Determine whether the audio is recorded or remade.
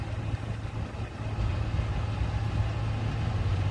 recorded